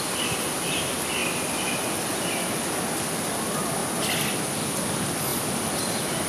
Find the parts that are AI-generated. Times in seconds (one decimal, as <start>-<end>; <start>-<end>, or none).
1.2-3.1; 5.3-6.3